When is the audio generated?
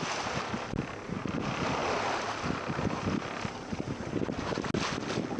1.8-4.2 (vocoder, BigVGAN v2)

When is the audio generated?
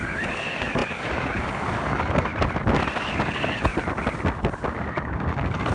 0.0-2.3 (codec, DAC); 3.1-3.7; 5.0-5.7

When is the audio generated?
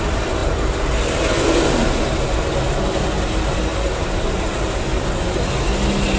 none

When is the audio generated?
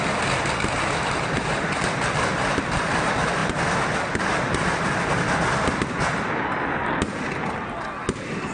none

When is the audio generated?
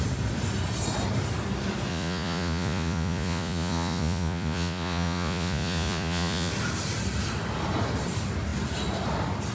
1.9-6.5 (vocoder, Vocos)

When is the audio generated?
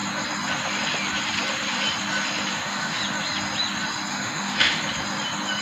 2.5-3.0 (autoencoder, DAC-VAE); 4.1-4.8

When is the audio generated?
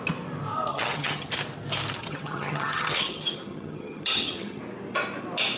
0.7-1.3 (vocoder, HiFi-GAN); 2.0-4.6